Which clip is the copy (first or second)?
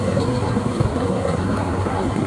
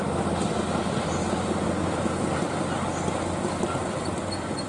first